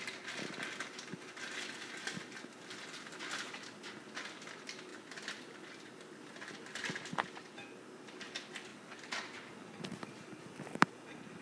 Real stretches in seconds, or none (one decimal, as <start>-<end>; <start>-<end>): 0.0-11.4